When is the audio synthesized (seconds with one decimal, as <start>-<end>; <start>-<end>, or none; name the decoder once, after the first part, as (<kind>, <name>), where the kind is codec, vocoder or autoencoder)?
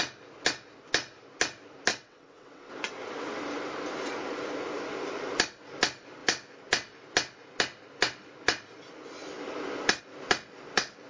1.9-2.7 (vocoder, WaveNeXt)